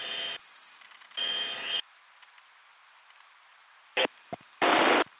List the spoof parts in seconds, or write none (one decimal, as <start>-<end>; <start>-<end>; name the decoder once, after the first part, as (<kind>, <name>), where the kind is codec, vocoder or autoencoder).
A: none